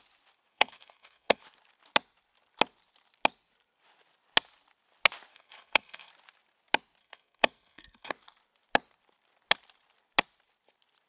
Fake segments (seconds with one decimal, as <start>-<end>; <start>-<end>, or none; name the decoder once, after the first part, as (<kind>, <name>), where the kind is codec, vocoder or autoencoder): 0.5-1.4 (codec, SNAC); 5.3-6.1; 7.0-8.1